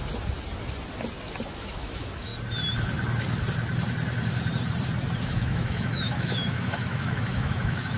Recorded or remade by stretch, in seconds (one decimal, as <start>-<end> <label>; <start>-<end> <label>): 0.0-1.5 recorded; 1.5-2.3 remade; 2.3-5.2 recorded; 5.2-8.0 remade